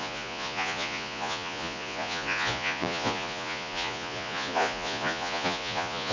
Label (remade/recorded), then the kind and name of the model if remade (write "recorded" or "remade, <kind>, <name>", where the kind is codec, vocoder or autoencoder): remade, vocoder, Vocos